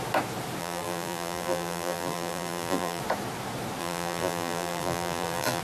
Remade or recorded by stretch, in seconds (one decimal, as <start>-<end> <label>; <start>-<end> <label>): 0.0-0.6 recorded; 0.6-3.0 remade; 3.0-3.8 recorded; 3.8-5.6 remade